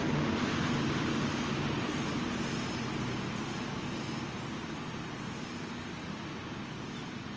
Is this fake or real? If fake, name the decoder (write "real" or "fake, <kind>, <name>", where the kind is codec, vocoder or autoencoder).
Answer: real